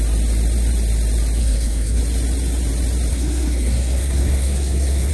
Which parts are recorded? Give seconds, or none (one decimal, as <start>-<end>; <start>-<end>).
0.0-1.4; 2.0-3.1